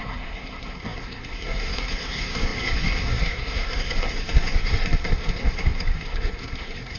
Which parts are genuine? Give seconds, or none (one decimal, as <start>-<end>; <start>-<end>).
none